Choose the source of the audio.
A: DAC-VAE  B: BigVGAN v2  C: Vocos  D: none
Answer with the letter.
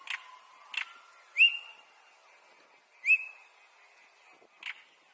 D